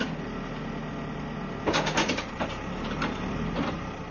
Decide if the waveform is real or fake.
real